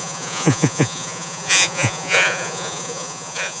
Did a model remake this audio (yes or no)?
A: yes